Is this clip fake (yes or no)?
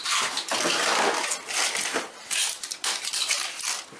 no